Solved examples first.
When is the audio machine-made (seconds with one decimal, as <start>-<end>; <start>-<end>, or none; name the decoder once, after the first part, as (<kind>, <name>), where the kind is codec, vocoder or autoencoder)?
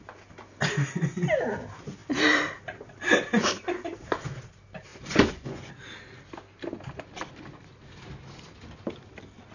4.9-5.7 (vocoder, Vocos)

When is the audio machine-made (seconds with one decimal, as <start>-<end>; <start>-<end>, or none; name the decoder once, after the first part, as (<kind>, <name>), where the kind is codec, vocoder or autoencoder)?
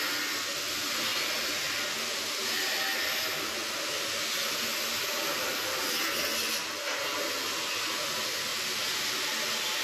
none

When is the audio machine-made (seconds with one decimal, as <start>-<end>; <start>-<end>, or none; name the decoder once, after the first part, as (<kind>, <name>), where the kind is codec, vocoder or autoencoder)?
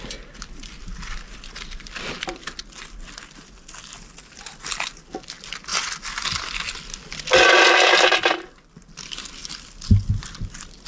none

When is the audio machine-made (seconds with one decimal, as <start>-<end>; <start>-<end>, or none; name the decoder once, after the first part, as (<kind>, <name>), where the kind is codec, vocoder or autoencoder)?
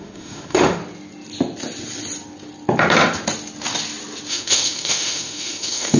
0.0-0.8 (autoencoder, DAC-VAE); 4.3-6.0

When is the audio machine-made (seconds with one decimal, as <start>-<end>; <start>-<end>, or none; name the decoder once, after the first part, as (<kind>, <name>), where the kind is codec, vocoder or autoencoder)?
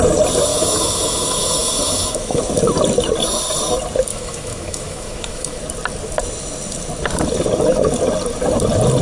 0.5-2.4 (autoencoder, DAC-VAE); 4.1-5.6